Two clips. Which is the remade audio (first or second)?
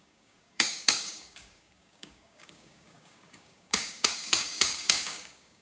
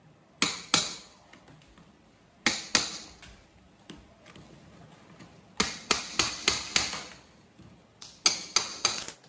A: first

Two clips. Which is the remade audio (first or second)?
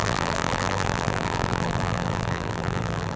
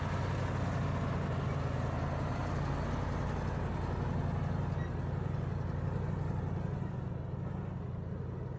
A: first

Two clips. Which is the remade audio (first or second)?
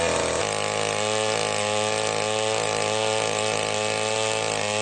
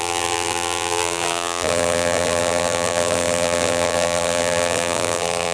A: second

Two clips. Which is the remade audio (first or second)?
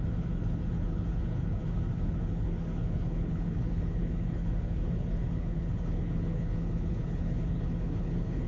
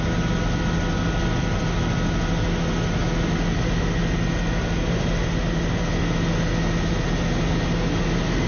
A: first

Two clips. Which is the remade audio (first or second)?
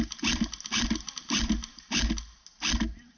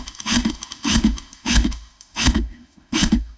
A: second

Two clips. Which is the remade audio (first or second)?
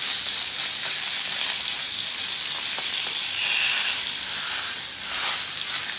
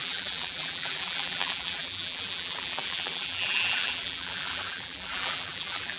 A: second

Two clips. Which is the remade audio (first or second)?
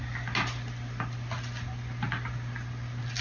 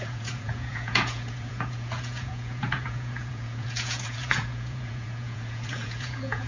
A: second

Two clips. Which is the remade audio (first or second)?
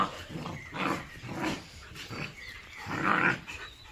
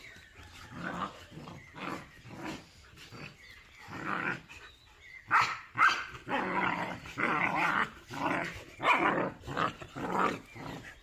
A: first